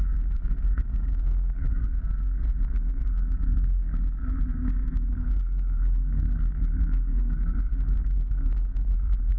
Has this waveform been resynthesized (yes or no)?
yes